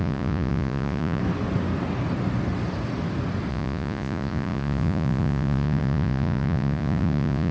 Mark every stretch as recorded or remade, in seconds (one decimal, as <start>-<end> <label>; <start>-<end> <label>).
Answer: 0.0-1.2 remade; 1.2-3.5 recorded; 3.5-7.5 remade